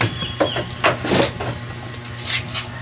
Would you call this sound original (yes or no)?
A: yes